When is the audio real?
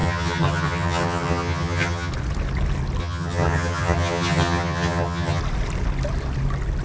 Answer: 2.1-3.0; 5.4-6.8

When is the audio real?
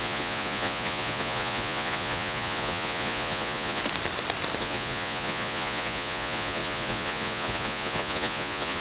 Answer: 3.8-4.6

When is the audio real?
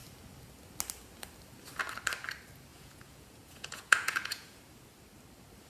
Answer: 0.0-2.7; 4.6-5.7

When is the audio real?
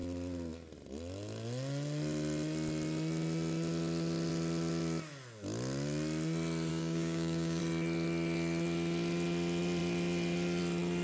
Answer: 0.0-6.7; 7.6-11.0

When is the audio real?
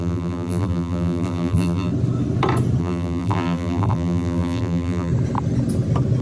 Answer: 1.9-2.8; 5.1-6.2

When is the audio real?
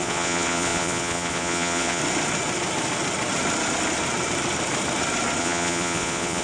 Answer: 2.0-5.4